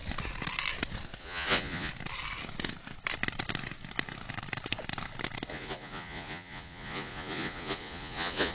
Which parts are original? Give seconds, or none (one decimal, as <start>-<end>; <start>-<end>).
0.0-1.2; 1.9-5.5

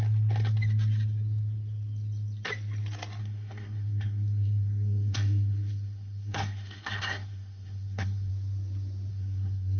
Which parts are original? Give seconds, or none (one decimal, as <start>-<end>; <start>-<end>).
0.0-3.2; 8.3-9.1

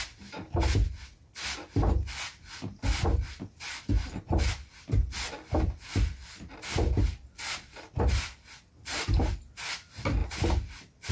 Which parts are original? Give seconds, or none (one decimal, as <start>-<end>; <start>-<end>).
0.0-11.1

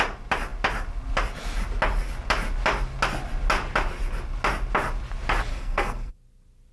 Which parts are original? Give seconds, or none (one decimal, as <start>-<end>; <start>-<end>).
0.0-5.5; 6.1-6.7

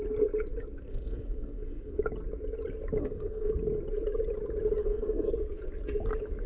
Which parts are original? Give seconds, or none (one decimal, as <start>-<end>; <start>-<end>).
0.0-0.9; 2.0-3.0; 3.5-4.8; 5.3-6.5

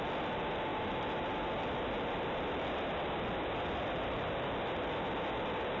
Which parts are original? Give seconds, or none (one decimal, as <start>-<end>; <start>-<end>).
0.0-5.8